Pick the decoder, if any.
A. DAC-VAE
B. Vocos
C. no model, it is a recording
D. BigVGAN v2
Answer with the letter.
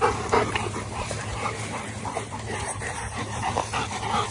D